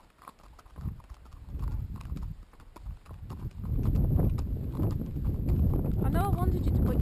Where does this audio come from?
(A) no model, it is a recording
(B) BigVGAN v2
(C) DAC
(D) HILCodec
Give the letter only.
A